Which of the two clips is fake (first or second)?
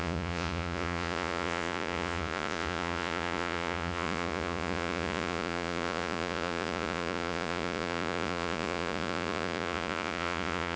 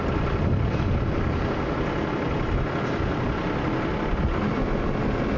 first